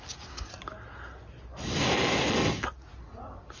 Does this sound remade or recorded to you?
recorded